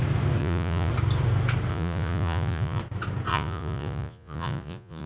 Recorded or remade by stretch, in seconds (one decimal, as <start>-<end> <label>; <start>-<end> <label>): 0.0-0.4 recorded; 0.4-0.9 remade; 0.9-1.7 recorded; 1.7-2.8 remade; 2.8-3.3 recorded; 3.3-5.1 remade